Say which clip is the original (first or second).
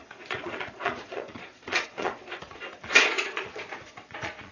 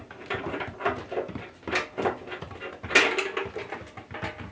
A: second